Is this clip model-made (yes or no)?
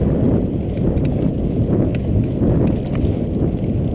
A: no